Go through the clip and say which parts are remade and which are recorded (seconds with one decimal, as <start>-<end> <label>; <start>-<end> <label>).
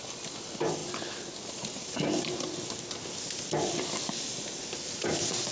0.0-5.5 recorded